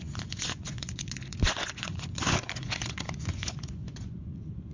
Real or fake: fake